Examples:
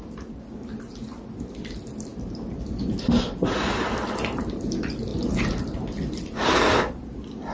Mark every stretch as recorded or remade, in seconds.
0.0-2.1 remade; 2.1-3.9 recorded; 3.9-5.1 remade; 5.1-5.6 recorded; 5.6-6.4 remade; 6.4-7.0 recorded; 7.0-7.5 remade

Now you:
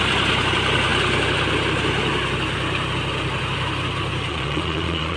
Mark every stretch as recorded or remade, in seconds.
0.0-4.3 recorded; 4.3-5.2 remade

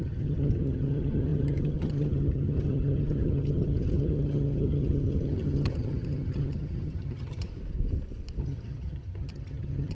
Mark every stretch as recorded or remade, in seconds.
0.0-7.5 remade; 7.5-8.4 recorded; 8.4-9.9 remade

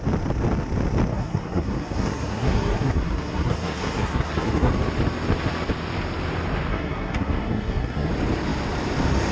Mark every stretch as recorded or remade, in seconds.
0.0-1.1 recorded; 1.1-4.7 remade; 4.7-6.7 recorded; 6.7-8.1 remade; 8.1-9.3 recorded

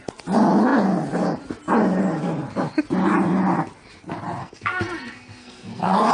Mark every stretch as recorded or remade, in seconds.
0.0-4.4 recorded; 4.4-6.1 remade

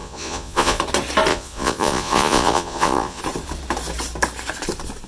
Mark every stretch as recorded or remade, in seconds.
0.0-0.8 remade; 0.8-1.3 recorded; 1.3-3.2 remade; 3.2-5.1 recorded

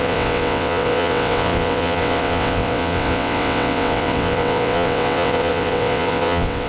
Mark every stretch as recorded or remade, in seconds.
0.0-6.7 remade